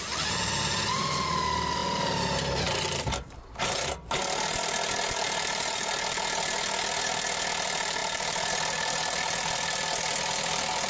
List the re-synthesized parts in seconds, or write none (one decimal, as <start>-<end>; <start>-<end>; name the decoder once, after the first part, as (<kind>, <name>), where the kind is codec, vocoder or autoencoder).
8.0-8.5 (vocoder, BigVGAN v2)